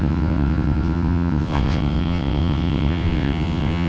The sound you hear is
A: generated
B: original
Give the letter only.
A